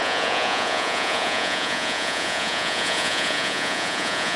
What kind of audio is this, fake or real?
fake